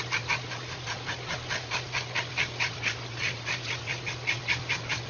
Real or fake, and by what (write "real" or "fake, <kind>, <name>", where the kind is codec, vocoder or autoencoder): real